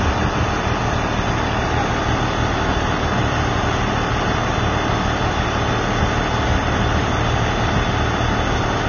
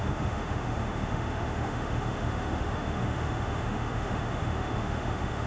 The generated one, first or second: second